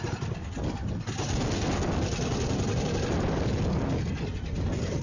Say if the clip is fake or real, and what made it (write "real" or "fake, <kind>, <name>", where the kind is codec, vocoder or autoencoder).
real